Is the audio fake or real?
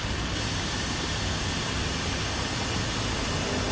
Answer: real